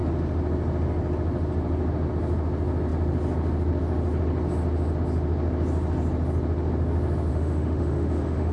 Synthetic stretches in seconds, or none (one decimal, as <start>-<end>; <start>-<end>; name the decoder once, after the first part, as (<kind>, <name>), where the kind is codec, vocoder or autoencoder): 7.3-8.5 (autoencoder, DAC-VAE)